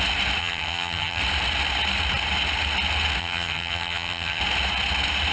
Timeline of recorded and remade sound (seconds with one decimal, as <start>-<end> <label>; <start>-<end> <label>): 0.0-0.4 recorded; 0.4-1.2 remade; 1.2-3.2 recorded; 3.2-4.4 remade; 4.4-5.3 recorded